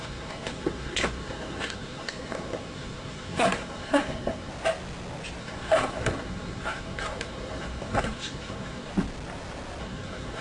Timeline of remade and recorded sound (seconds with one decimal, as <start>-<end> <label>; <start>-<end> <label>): 0.0-4.5 remade; 4.5-5.4 recorded; 5.4-8.9 remade; 8.9-9.8 recorded; 9.8-10.4 remade